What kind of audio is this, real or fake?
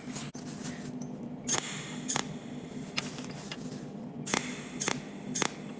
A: real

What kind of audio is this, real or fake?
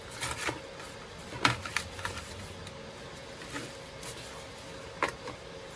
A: real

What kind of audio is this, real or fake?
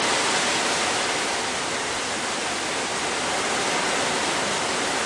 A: real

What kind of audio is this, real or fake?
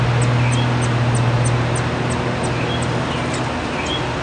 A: real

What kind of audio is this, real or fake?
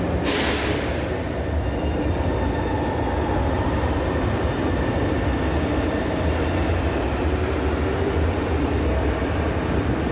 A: real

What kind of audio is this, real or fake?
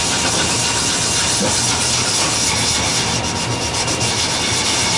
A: real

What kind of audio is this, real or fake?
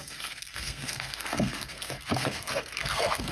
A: fake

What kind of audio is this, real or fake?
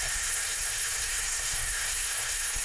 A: fake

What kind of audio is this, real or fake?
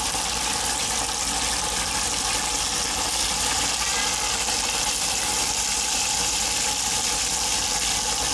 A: real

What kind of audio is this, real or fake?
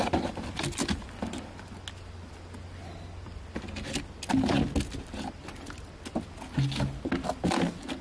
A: real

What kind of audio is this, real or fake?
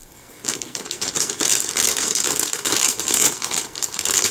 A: fake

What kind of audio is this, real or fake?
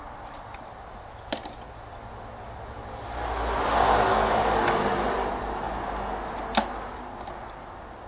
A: real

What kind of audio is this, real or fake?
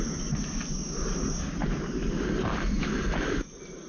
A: real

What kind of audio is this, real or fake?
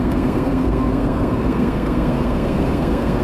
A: fake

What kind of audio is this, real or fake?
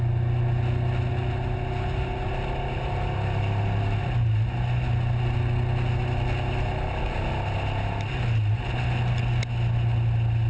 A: real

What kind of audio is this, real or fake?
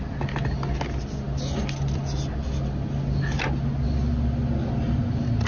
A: real